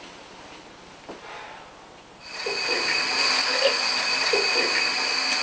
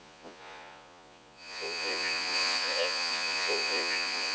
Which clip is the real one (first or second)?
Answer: first